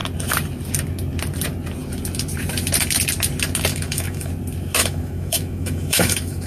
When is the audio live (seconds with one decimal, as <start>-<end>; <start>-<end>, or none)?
0.0-3.7; 4.3-4.8